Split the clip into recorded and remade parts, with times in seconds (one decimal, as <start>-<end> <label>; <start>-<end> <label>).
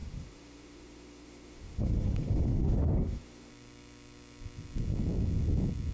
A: 0.0-3.5 remade; 3.5-5.9 recorded